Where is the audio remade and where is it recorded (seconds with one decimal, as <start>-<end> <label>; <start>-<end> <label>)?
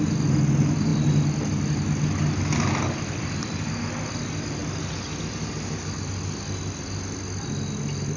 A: 0.0-8.2 recorded